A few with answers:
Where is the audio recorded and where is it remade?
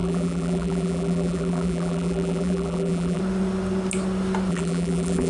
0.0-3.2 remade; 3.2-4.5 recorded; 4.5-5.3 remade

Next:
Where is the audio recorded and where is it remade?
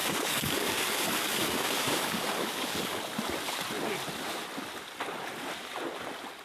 0.0-3.0 remade; 3.0-6.4 recorded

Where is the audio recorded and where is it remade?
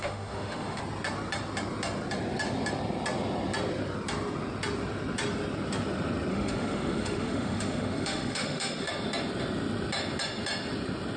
0.0-0.8 remade; 0.8-6.3 recorded; 6.3-8.9 remade; 8.9-11.2 recorded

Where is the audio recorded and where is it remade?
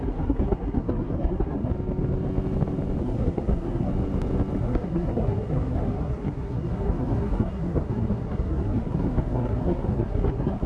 0.0-1.7 remade; 1.7-3.0 recorded; 3.0-3.9 remade; 3.9-4.6 recorded; 4.6-10.7 remade